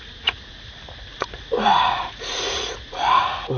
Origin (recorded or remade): remade